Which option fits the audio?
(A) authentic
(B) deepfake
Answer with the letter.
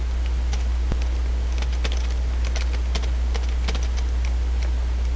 A